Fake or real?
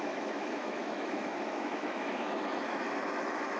fake